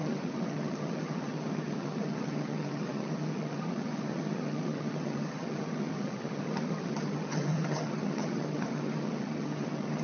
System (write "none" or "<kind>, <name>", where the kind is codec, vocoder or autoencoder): vocoder, HiFi-GAN